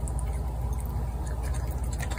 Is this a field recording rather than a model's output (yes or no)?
yes